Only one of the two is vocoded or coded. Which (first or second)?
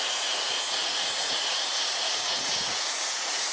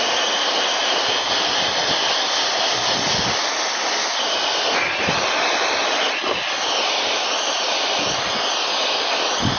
first